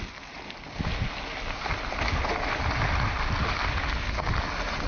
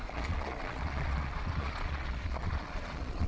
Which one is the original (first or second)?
first